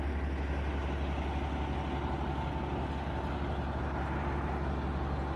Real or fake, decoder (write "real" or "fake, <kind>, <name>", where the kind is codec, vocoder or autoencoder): real